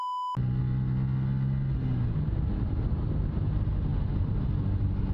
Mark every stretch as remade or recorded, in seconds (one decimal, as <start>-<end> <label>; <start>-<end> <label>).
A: 0.0-5.1 recorded

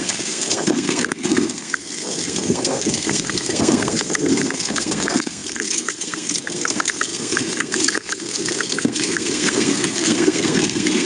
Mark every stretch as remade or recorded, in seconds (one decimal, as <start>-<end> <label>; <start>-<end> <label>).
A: 0.0-11.0 remade

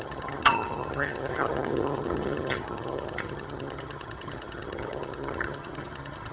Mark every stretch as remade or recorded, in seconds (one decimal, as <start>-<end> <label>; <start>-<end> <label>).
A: 0.0-6.3 remade